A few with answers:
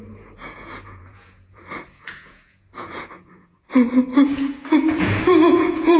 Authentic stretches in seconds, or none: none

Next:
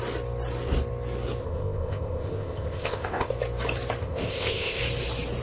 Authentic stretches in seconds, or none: 0.0-1.4; 3.3-4.0; 4.8-5.4